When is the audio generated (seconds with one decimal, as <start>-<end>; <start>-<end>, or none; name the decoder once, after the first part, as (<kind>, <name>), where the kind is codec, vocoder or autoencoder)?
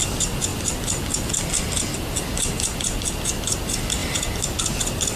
none